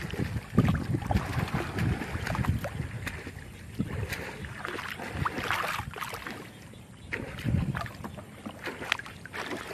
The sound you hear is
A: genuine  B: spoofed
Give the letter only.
A